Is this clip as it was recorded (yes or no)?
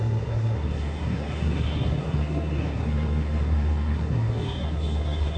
no